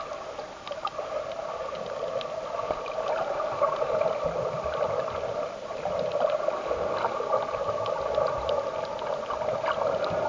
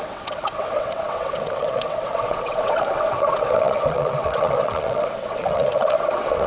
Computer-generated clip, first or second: second